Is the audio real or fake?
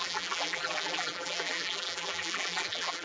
fake